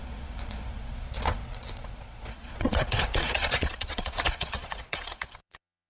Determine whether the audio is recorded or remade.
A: remade